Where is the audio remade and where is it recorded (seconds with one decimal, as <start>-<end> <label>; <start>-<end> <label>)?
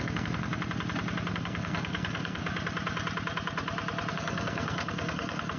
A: 0.0-0.5 remade; 0.5-1.3 recorded; 1.3-2.4 remade; 2.4-4.1 recorded; 4.1-5.6 remade